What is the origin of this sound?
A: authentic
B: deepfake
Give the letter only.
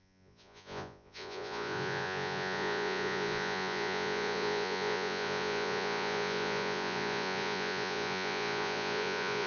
B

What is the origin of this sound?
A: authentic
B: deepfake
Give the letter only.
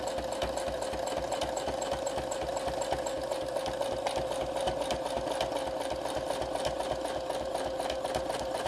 A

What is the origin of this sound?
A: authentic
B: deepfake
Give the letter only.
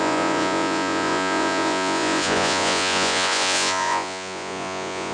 B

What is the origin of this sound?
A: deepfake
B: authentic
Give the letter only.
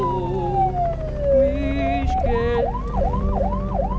B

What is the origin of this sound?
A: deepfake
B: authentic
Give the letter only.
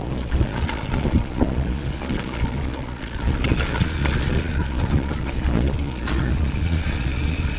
A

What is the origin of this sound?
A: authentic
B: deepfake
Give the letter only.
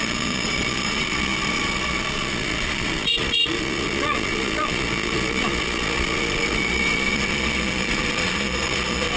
B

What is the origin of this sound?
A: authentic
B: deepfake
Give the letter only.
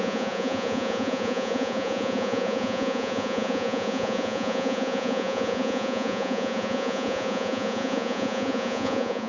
B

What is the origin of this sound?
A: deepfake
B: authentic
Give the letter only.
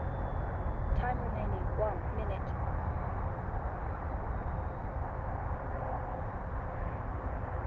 B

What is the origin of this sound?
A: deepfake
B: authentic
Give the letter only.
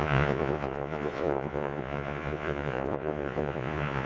A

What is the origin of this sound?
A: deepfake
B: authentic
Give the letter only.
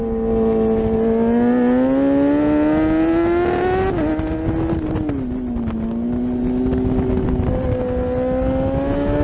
B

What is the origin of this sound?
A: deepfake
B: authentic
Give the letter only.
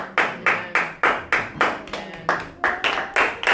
B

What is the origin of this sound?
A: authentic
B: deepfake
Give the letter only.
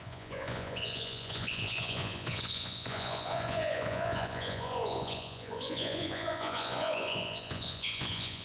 B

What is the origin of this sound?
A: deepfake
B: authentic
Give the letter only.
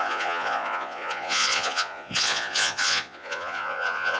A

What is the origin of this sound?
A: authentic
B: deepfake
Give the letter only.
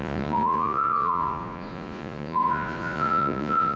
B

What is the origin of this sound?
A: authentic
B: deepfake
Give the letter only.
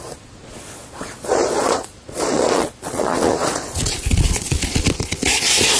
B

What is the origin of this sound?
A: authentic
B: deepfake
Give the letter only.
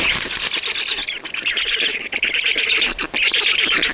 A